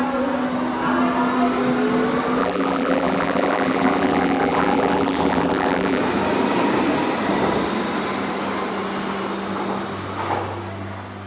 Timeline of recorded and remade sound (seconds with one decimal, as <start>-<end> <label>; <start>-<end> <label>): 0.0-2.4 recorded; 2.4-6.0 remade; 6.0-11.3 recorded